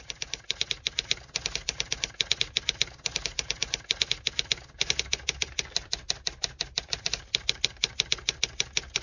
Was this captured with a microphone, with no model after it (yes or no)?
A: yes